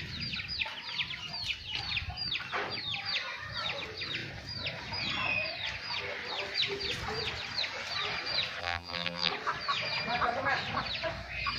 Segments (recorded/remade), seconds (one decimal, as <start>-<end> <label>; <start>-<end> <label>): 0.0-8.6 recorded; 8.6-9.3 remade; 9.3-11.6 recorded